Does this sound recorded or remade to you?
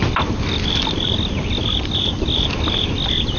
recorded